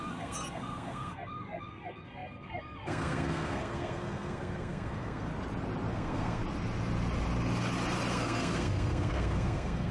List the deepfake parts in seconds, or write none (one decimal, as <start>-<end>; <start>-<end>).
0.0-5.3; 5.9-6.4; 8.1-9.9